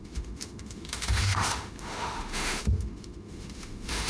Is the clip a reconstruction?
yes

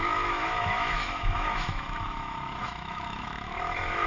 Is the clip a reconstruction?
yes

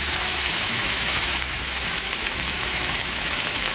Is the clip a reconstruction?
yes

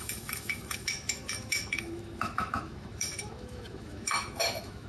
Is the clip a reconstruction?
yes